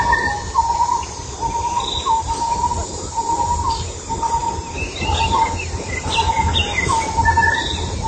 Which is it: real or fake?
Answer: real